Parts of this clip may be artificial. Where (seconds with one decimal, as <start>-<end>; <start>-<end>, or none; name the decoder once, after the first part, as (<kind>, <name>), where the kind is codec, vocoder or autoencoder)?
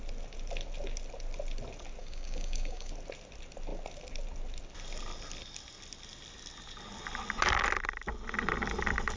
2.0-2.9 (codec, DAC)